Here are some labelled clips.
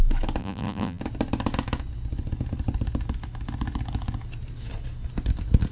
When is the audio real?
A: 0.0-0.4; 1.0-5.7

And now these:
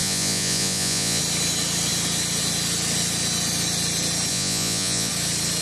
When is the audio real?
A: 1.2-4.3; 5.1-5.6

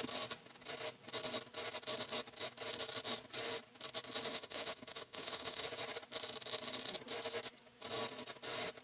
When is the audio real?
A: 0.0-4.3; 5.7-8.8

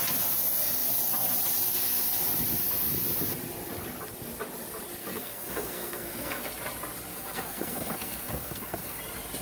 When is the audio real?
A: 0.0-5.0; 6.5-7.1; 9.0-9.4

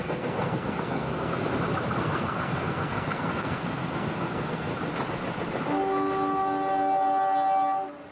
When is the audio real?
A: 1.4-2.0; 4.7-8.1